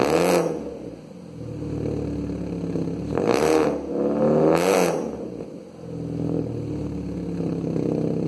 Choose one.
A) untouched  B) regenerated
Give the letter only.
A